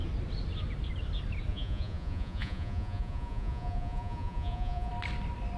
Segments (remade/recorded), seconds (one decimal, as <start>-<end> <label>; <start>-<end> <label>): 0.0-1.5 recorded; 1.5-4.9 remade; 4.9-5.6 recorded